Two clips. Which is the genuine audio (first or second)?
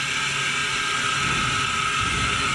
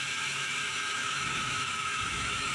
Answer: first